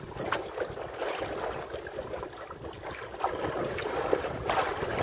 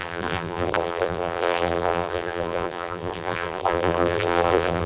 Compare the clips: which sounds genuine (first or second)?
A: first